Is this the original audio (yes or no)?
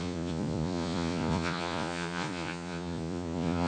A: no